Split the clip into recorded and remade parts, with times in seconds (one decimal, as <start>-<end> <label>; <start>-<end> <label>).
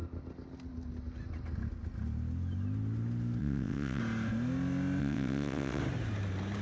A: 0.0-3.4 recorded; 3.4-4.0 remade; 4.0-5.0 recorded; 5.0-5.8 remade; 5.8-6.6 recorded